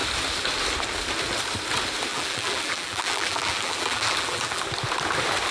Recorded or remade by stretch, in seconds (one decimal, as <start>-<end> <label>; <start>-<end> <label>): 0.0-2.1 recorded; 2.1-4.6 remade; 4.6-5.5 recorded

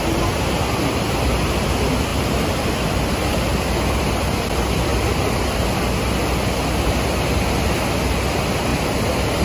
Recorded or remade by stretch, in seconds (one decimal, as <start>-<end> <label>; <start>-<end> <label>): 0.0-2.1 recorded; 2.1-2.7 remade; 2.7-8.7 recorded; 8.7-9.4 remade

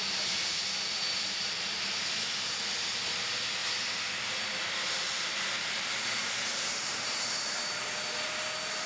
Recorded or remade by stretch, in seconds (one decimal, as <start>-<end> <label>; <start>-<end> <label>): 0.0-6.5 recorded; 6.5-7.6 remade; 7.6-8.9 recorded

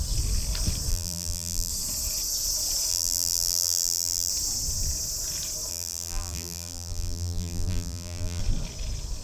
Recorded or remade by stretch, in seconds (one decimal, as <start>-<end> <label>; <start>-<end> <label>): 0.0-0.9 recorded; 0.9-1.7 remade; 1.7-2.9 recorded; 2.9-4.3 remade; 4.3-5.7 recorded; 5.7-8.4 remade; 8.4-9.2 recorded

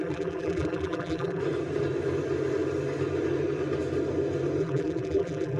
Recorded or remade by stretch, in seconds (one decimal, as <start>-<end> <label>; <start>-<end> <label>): 0.0-1.4 remade; 1.4-4.6 recorded; 4.6-5.6 remade